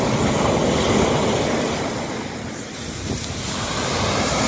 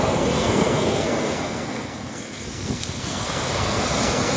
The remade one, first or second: second